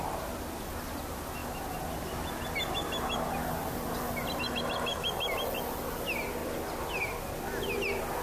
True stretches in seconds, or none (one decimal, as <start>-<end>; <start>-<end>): 0.0-6.4; 7.2-8.2